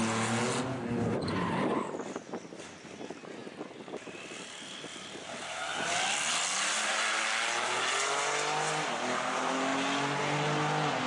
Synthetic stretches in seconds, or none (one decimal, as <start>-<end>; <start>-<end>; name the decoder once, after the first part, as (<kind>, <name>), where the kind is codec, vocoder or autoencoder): none